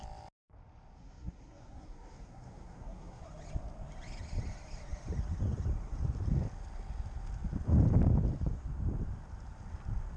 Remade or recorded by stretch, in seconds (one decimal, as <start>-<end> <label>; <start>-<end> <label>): 0.0-1.0 recorded; 1.0-3.2 remade; 3.2-10.2 recorded